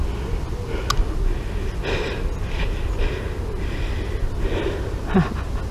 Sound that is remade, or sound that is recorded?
recorded